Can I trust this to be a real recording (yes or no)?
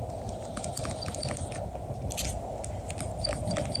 yes